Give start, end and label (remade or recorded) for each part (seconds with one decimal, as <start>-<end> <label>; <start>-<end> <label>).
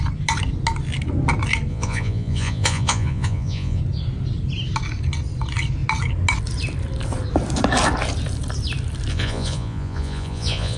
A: 0.0-1.7 recorded; 1.7-3.8 remade; 3.8-9.1 recorded; 9.1-10.8 remade